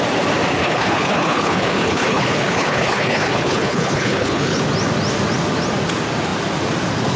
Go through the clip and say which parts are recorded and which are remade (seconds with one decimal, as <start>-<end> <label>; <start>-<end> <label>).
0.0-0.6 recorded; 0.6-4.6 remade; 4.6-7.2 recorded